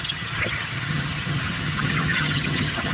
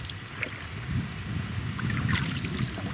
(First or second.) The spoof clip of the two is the first